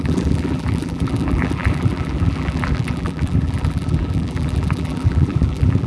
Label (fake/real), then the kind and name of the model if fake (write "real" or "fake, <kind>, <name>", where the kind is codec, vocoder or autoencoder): fake, vocoder, BigVGAN v2